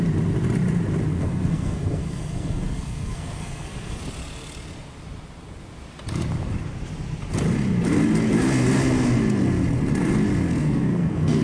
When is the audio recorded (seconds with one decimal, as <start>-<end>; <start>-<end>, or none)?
0.0-1.1; 4.0-10.6